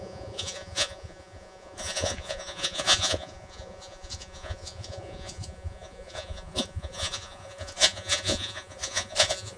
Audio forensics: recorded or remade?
remade